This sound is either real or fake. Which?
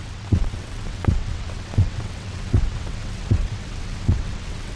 fake